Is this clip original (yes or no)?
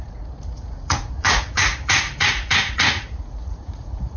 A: no